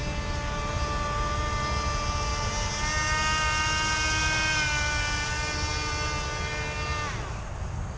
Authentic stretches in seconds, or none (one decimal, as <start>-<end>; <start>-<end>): 0.0-8.0